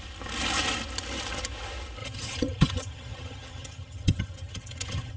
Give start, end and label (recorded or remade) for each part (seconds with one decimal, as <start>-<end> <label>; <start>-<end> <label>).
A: 0.0-2.0 recorded; 2.0-5.2 remade